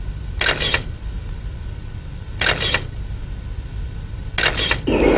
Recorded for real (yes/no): yes